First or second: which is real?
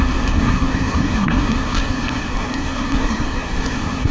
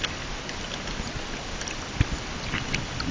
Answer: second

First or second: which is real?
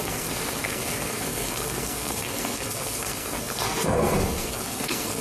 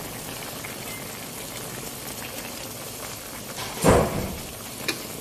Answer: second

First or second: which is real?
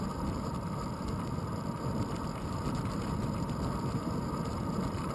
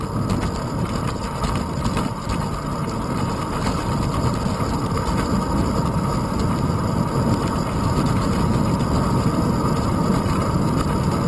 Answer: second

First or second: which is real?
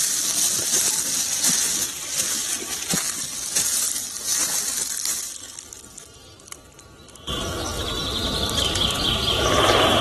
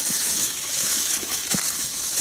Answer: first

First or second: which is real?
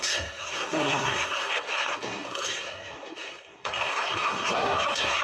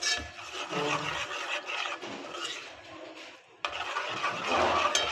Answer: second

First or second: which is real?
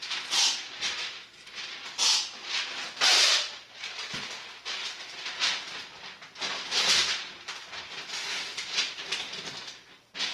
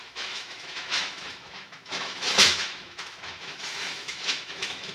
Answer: first